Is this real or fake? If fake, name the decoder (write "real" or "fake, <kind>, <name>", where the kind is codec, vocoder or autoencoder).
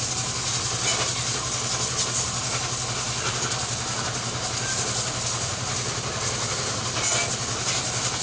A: real